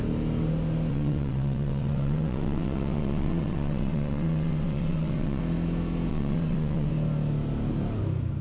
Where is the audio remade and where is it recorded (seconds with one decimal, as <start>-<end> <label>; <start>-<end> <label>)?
0.0-0.9 recorded; 0.9-5.4 remade; 5.4-6.1 recorded; 6.1-6.9 remade; 6.9-8.4 recorded